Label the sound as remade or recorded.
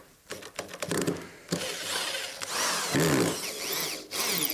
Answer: recorded